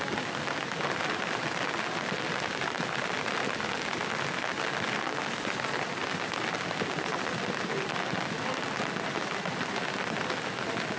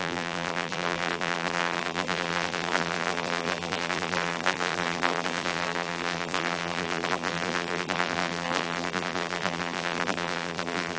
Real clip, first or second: first